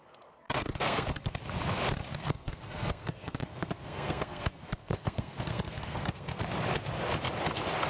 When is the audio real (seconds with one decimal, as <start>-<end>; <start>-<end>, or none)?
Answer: 1.3-2.1; 6.4-7.9